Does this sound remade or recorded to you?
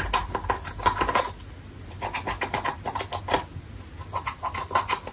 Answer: recorded